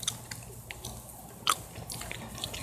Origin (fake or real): real